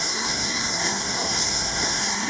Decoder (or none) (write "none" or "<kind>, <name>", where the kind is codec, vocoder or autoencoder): codec, SNAC